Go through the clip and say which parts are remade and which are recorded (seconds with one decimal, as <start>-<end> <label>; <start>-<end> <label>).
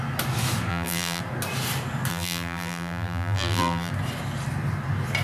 0.0-0.7 recorded; 0.7-1.2 remade; 1.2-2.1 recorded; 2.1-3.9 remade; 3.9-5.2 recorded